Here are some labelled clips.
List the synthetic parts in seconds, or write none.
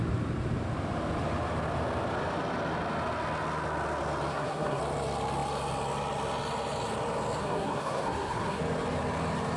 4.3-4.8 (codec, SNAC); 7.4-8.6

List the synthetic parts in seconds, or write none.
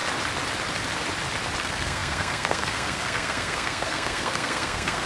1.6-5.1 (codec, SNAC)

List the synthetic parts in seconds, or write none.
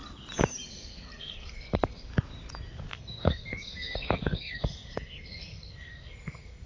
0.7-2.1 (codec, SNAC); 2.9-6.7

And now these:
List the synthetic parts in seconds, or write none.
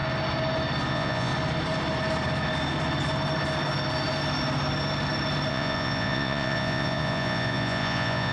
0.9-1.3 (vocoder, Vocos); 5.5-8.3